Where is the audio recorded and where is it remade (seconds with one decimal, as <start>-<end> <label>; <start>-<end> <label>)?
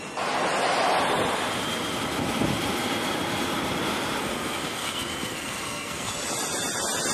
0.0-4.2 recorded; 4.2-6.1 remade; 6.1-7.1 recorded